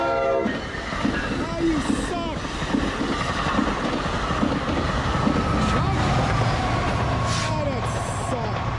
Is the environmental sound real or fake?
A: real